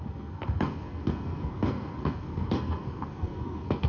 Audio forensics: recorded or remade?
remade